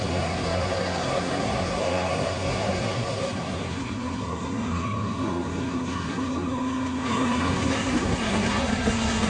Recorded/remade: remade